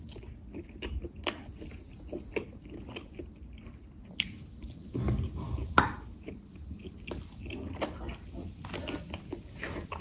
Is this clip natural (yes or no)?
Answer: yes